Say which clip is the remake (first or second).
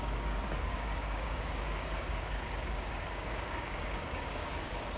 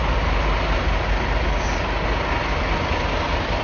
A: first